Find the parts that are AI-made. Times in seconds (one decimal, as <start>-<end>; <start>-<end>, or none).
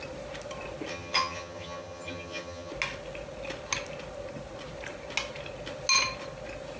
0.9-2.7